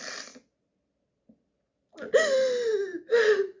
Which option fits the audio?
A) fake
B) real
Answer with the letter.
B